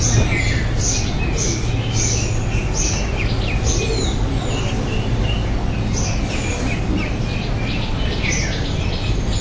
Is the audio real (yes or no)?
yes